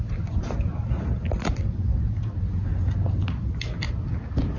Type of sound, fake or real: real